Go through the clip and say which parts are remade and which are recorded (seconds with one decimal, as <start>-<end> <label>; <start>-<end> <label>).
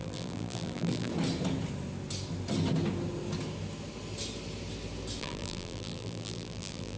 0.0-1.1 remade; 1.1-5.2 recorded; 5.2-7.0 remade